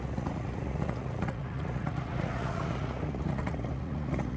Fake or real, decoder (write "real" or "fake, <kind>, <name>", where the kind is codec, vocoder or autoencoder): fake, vocoder, Vocos